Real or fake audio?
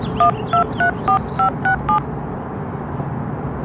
real